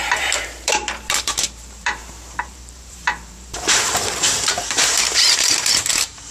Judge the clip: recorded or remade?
remade